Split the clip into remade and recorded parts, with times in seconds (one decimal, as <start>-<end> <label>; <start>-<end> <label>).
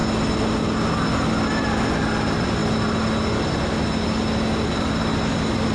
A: 0.0-5.7 recorded